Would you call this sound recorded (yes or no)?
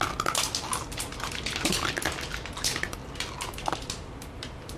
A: yes